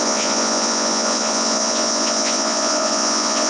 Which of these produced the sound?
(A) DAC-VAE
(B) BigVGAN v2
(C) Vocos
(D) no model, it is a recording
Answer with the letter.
C